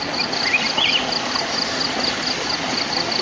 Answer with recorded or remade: recorded